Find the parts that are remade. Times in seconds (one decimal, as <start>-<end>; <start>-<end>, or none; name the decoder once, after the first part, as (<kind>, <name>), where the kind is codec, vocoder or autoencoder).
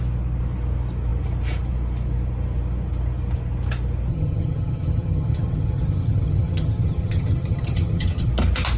4.1-8.3 (vocoder, HiFi-GAN)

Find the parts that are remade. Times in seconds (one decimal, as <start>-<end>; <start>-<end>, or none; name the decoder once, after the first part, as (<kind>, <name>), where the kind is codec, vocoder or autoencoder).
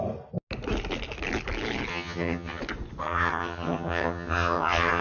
1.9-2.6 (vocoder, HiFi-GAN); 3.0-5.0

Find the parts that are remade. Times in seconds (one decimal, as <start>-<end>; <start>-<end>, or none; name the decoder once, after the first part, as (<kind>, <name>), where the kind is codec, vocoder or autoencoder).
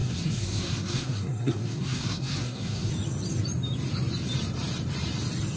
0.0-2.9 (codec, SNAC)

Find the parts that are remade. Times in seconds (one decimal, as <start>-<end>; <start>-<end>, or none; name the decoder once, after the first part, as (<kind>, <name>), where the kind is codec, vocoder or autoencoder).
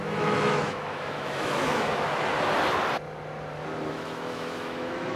0.0-2.3 (autoencoder, DAC-VAE); 3.9-5.2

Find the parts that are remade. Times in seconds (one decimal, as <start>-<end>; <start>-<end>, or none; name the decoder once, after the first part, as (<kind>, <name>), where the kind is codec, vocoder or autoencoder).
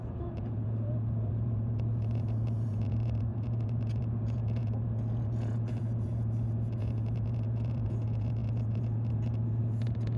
0.0-10.2 (vocoder, Vocos)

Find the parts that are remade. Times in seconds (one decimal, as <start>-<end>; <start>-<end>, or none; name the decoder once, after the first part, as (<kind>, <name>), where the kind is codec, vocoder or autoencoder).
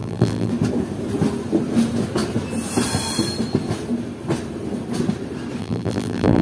0.0-0.5 (vocoder, BigVGAN v2); 5.6-6.4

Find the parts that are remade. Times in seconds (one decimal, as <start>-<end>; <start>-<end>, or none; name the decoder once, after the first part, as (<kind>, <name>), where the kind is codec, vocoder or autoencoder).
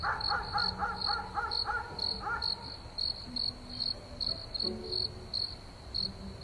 none